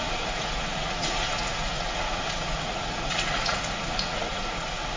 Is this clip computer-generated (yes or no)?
yes